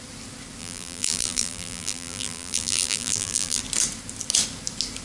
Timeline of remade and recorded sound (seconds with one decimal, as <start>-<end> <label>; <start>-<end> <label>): 0.0-0.6 recorded; 0.6-3.6 remade; 3.6-5.0 recorded